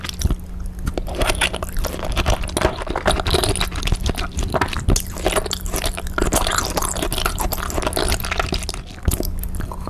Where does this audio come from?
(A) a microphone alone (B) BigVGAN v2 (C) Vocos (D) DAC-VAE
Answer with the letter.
A